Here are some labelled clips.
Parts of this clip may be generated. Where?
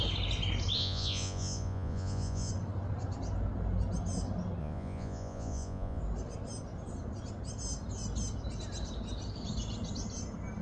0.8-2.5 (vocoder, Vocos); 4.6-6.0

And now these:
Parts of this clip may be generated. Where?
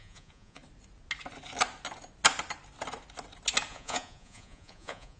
0.0-0.6 (vocoder, Vocos); 3.7-5.2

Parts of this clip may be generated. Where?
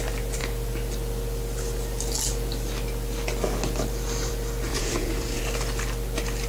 4.7-5.4 (vocoder, Vocos)